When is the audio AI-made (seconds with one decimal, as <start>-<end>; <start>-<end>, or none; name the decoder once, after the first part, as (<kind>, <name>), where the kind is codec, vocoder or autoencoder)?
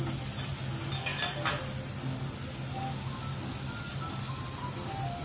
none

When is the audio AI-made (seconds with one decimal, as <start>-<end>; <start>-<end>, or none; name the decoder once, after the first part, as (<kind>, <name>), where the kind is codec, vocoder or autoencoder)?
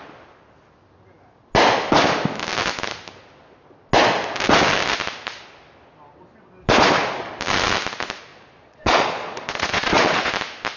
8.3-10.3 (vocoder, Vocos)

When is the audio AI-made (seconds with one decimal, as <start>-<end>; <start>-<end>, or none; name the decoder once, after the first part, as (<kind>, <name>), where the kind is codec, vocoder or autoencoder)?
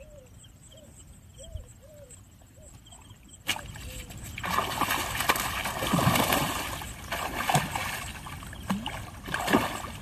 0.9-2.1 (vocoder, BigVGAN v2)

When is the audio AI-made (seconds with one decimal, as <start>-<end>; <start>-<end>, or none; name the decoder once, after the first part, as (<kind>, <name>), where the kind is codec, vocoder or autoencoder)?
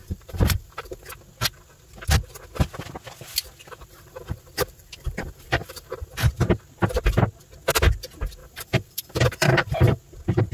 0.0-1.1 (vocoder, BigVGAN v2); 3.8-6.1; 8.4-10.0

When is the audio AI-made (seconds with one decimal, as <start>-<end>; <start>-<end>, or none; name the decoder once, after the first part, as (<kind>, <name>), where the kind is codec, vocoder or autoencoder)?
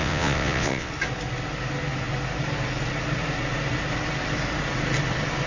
0.0-0.9 (vocoder, WaveNeXt)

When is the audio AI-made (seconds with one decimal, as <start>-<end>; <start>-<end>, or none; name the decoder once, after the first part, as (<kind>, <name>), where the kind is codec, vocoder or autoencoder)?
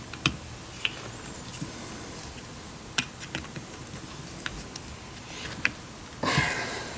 none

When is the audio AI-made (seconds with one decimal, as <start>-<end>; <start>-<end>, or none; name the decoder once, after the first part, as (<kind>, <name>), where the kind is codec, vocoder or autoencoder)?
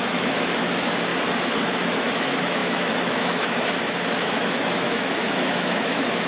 0.0-1.1 (autoencoder, DAC-VAE); 1.7-6.3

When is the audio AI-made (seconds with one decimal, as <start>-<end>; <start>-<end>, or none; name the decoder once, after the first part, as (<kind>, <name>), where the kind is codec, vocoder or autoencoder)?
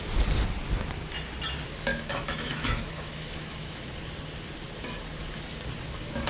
1.9-3.8 (autoencoder, DAC-VAE)